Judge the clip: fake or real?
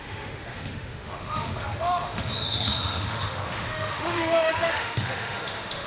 fake